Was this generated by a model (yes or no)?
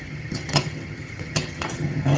yes